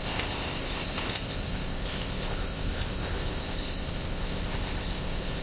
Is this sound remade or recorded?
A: remade